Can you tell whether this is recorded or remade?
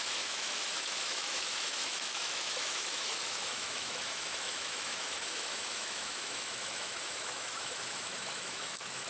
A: remade